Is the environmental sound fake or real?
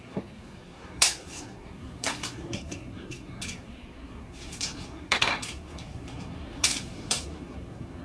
fake